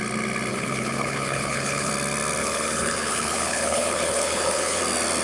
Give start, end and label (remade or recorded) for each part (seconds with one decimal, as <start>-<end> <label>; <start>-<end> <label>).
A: 0.0-0.5 recorded; 0.5-1.9 remade; 1.9-2.4 recorded; 2.4-4.8 remade; 4.8-5.2 recorded